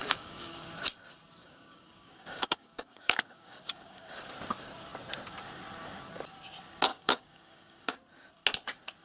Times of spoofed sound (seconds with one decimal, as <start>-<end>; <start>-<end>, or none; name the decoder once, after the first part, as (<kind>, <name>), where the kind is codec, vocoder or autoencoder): 0.0-0.7 (codec, DAC); 1.4-4.3; 6.9-7.9